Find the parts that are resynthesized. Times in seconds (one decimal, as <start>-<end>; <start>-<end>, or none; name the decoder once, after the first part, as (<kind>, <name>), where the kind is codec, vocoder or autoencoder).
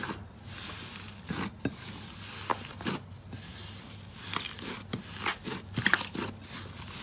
2.5-3.1 (vocoder, BigVGAN v2); 3.5-4.6